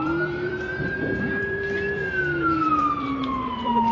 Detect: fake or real fake